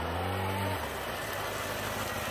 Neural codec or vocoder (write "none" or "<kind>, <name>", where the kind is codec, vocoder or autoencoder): none